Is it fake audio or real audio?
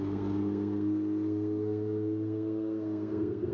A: fake